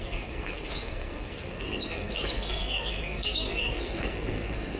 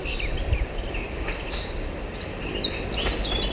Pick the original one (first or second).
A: second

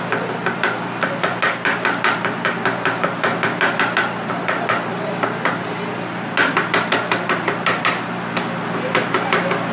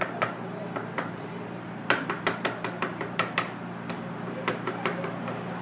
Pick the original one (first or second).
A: first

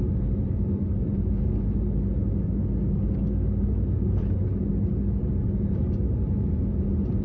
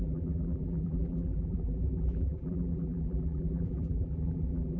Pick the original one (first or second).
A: first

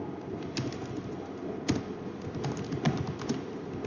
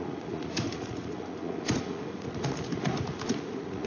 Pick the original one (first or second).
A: first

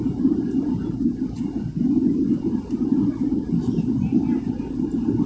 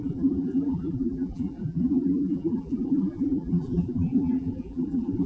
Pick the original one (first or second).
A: first